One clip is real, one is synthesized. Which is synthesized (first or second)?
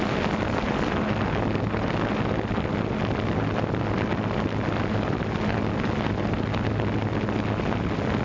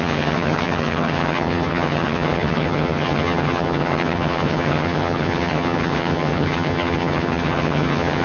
second